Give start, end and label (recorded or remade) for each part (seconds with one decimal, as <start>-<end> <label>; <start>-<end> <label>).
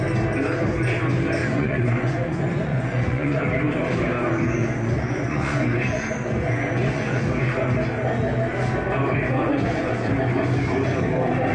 0.0-1.4 recorded; 1.4-3.4 remade; 3.4-4.6 recorded; 4.6-7.2 remade; 7.2-9.4 recorded; 9.4-10.1 remade; 10.1-11.5 recorded